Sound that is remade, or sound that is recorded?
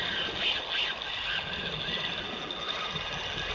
recorded